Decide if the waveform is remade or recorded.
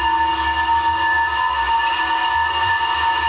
recorded